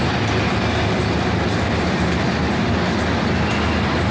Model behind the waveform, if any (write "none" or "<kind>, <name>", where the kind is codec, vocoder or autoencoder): none